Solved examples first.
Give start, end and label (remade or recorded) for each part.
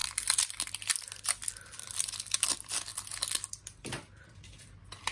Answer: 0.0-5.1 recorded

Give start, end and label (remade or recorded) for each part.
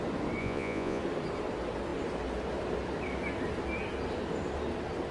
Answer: 0.0-0.4 recorded; 0.4-1.0 remade; 1.0-5.1 recorded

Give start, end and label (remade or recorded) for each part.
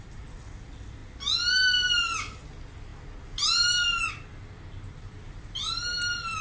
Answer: 0.0-6.4 recorded